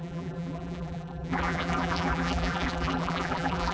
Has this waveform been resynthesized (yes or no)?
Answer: yes